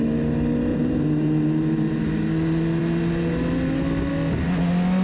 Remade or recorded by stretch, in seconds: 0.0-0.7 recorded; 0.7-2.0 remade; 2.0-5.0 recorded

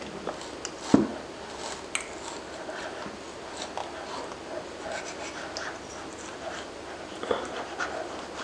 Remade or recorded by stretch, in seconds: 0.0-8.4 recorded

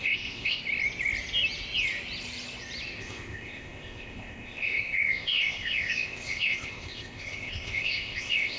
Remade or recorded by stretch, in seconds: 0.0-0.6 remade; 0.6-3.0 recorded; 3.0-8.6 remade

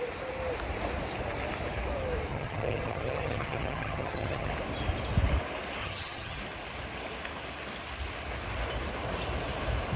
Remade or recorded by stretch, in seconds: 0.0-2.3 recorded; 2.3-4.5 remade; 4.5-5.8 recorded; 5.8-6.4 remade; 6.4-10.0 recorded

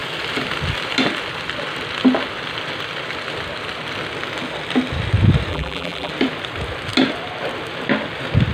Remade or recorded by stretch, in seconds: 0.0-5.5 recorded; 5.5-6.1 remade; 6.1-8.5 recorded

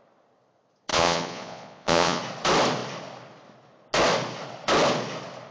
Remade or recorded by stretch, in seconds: 0.0-0.9 recorded; 0.9-2.2 remade; 2.2-5.5 recorded